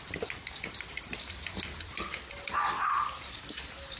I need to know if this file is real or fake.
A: real